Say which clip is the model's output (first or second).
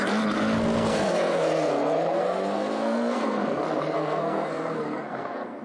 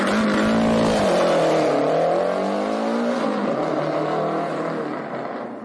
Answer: first